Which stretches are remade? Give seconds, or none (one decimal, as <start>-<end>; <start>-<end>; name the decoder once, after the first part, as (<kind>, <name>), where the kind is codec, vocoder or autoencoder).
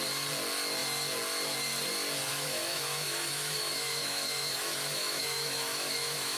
2.3-6.4 (autoencoder, DAC-VAE)